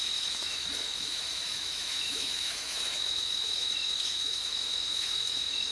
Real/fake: fake